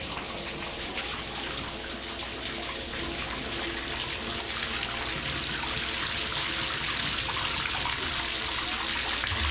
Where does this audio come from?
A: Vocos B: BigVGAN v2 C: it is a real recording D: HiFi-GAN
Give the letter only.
C